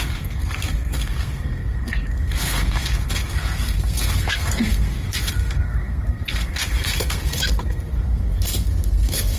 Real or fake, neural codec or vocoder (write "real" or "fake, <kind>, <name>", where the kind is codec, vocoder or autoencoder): fake, codec, SNAC